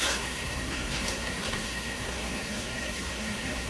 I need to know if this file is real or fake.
fake